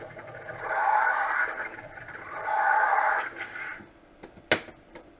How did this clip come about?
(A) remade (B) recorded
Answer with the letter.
B